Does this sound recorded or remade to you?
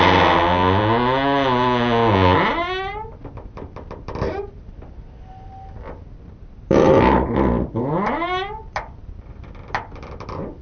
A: recorded